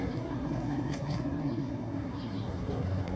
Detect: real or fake fake